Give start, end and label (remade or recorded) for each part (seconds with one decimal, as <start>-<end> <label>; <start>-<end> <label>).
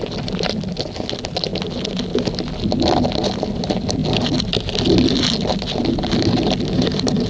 0.0-7.3 recorded